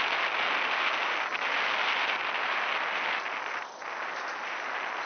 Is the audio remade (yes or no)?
no